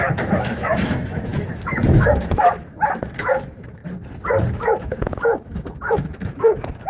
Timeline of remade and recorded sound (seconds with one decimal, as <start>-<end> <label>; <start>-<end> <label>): 0.0-3.8 remade; 3.8-4.5 recorded; 4.5-6.9 remade